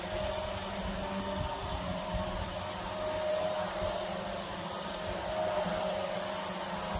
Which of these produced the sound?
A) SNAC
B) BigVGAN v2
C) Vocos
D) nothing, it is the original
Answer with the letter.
D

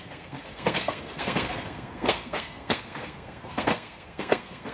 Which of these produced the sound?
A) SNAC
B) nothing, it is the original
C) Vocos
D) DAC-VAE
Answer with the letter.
A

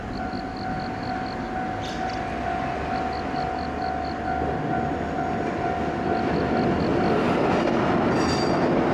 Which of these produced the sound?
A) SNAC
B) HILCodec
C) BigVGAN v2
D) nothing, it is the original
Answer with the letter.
D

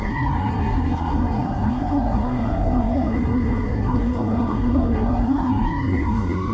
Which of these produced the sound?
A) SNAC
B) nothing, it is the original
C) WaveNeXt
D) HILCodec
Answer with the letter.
A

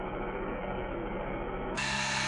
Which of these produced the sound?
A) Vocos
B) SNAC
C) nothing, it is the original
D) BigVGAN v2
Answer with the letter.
B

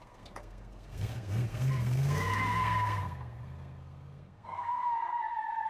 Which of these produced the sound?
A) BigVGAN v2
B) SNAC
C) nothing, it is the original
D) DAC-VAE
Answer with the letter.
B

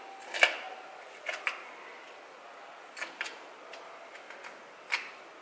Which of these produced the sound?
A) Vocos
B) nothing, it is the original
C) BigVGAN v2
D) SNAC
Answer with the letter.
B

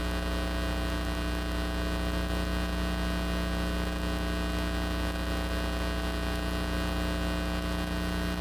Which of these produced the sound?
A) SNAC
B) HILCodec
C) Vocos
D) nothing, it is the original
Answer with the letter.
D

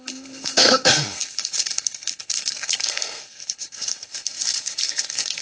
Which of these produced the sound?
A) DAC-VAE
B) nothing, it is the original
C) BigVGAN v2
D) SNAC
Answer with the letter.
D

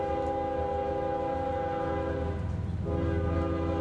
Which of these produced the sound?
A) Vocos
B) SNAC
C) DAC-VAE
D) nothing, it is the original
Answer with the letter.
D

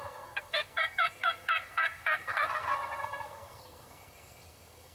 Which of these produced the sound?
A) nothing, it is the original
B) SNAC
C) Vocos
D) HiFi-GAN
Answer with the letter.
B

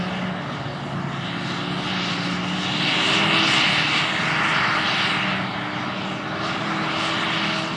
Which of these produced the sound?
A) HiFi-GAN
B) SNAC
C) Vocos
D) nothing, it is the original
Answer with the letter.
D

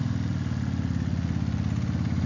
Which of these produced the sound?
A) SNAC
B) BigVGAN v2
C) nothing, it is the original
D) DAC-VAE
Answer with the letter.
C